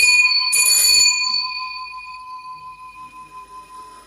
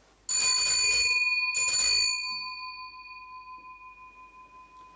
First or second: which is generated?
first